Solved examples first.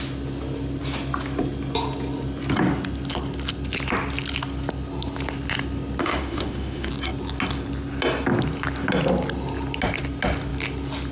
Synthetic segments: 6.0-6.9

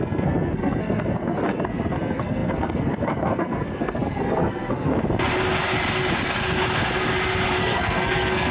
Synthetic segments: 0.0-4.9; 7.6-8.5

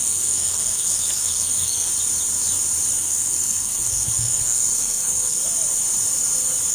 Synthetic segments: 0.0-1.9; 3.0-5.4

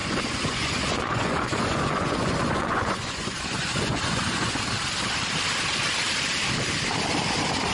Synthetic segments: 0.0-4.6

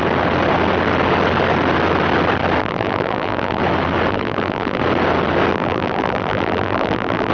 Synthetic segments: 2.6-3.6; 4.1-4.8; 5.5-7.3

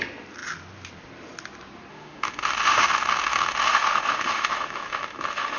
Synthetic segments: 1.9-5.6

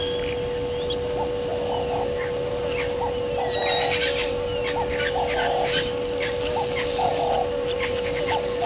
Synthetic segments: none

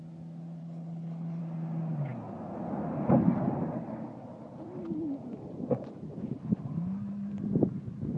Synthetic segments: 0.6-1.4